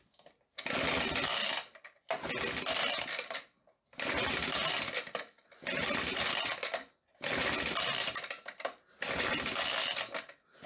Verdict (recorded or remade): recorded